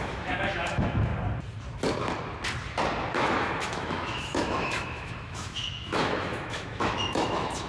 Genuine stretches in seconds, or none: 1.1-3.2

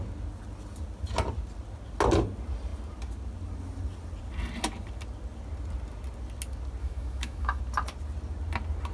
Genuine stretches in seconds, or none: 0.0-6.8; 7.6-8.9

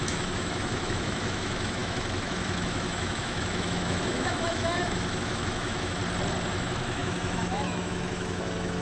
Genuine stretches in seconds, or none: 6.0-6.5